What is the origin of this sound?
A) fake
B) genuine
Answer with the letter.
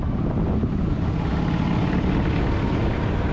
B